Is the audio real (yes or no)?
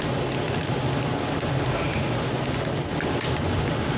yes